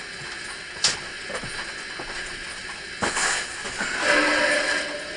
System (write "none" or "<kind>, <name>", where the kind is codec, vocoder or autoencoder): none